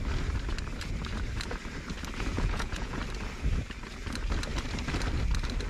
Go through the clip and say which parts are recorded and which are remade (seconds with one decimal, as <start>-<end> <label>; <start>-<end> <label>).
0.0-2.3 recorded; 2.3-3.0 remade; 3.0-5.7 recorded